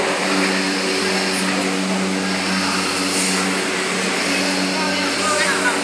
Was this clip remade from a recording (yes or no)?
no